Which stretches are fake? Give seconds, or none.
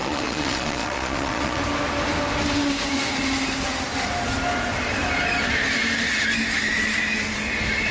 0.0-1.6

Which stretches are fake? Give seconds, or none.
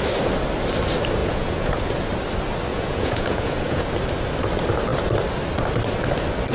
1.2-1.7; 2.7-3.9